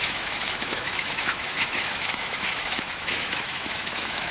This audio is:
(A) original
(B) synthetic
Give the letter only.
B